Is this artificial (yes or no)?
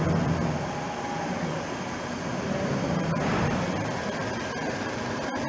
yes